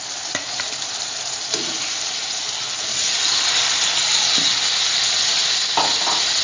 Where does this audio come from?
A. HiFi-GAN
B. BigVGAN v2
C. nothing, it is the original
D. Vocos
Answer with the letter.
C